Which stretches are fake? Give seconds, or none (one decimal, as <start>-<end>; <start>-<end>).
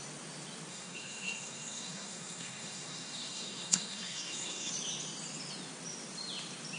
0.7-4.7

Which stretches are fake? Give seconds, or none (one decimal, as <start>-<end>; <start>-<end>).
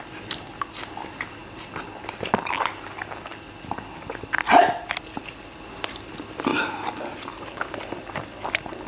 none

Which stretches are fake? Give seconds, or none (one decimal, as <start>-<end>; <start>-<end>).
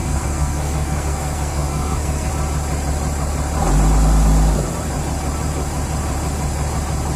0.0-2.3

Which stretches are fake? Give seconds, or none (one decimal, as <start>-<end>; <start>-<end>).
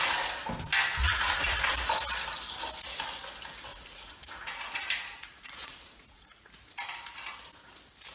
0.9-1.7; 3.7-6.3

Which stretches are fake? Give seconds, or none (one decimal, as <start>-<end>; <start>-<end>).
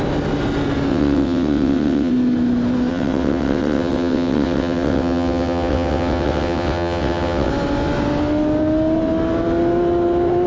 0.9-2.1; 2.9-7.5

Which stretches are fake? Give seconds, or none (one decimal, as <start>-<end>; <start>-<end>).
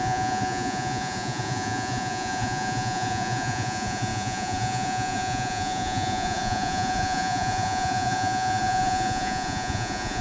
0.0-10.2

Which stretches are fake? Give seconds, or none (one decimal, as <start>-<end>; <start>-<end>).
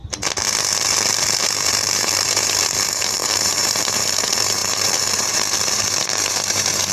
1.7-6.9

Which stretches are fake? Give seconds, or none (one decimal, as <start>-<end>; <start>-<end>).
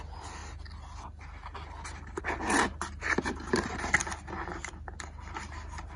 none